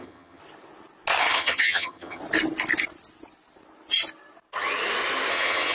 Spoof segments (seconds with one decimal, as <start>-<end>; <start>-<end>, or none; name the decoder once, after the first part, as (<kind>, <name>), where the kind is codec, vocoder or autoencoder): 0.0-0.4 (vocoder, HiFi-GAN); 1.2-2.2; 5.3-5.7